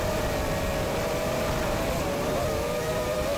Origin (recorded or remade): remade